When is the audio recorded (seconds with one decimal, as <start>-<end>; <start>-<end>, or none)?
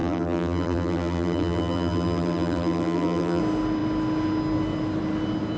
3.4-5.6